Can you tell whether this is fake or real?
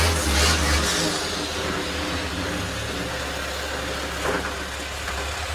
real